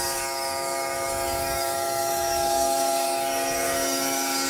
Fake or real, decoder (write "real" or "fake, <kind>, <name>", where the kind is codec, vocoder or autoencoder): fake, codec, DAC